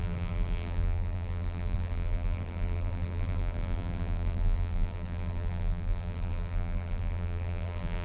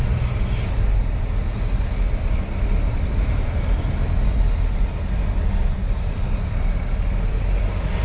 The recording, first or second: second